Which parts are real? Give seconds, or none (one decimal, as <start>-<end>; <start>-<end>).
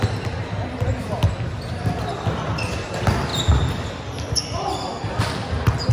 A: 0.0-5.9